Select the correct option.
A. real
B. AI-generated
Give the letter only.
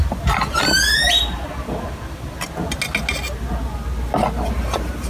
A